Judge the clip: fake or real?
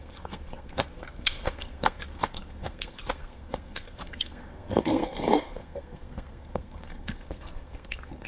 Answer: fake